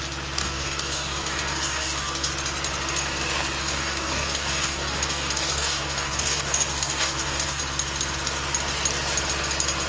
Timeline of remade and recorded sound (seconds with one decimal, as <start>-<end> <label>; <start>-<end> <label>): 0.0-0.4 recorded; 0.4-2.3 remade; 2.3-3.6 recorded; 3.6-7.6 remade; 7.6-9.9 recorded

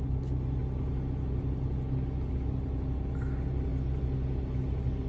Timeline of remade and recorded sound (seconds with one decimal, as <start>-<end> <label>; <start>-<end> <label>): 0.0-5.1 recorded